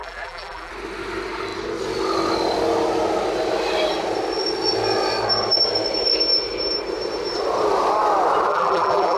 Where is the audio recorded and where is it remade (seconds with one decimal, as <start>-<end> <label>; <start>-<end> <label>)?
0.0-0.7 remade; 0.7-8.5 recorded; 8.5-9.2 remade